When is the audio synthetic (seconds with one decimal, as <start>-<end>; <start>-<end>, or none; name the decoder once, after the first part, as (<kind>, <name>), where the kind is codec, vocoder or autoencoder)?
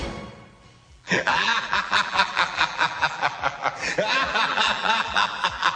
0.9-5.8 (vocoder, BigVGAN v2)